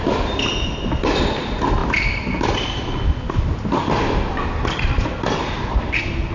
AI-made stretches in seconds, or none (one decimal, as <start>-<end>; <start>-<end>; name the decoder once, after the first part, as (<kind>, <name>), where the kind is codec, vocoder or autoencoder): none